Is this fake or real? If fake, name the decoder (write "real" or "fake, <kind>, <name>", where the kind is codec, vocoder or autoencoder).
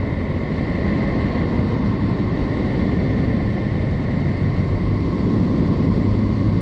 real